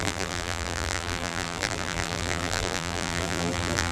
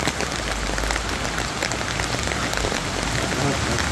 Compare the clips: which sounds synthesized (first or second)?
first